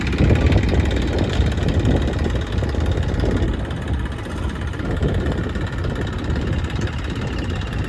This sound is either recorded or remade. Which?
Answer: recorded